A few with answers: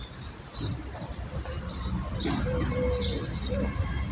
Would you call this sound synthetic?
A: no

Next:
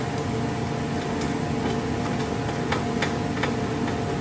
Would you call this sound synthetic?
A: no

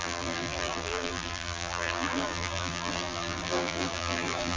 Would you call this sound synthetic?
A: yes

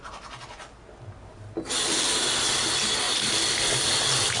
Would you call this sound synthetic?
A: no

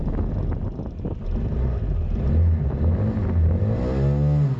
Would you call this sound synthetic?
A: no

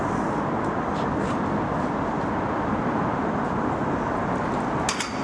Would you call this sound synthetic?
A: no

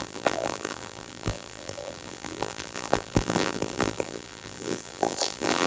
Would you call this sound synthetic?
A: yes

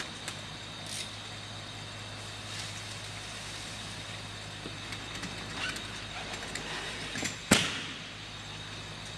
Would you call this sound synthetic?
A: no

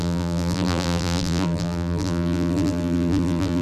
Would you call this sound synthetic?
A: yes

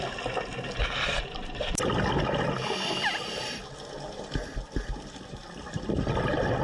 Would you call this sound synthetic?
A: no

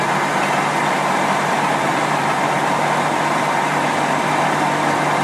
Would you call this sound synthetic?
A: no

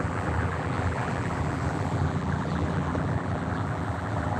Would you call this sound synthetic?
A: yes